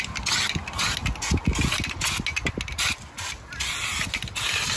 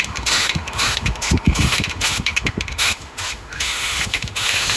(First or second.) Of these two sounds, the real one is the first